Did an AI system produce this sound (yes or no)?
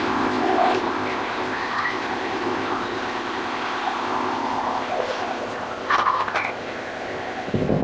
yes